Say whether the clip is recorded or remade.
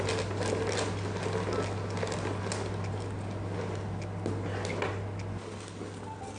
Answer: recorded